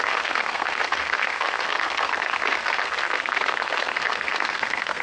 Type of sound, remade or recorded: remade